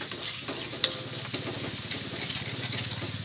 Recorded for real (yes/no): yes